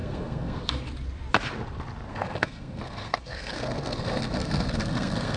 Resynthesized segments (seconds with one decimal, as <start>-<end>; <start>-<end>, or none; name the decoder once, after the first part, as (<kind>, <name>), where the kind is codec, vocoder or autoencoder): 0.0-0.6 (codec, SNAC); 2.1-5.4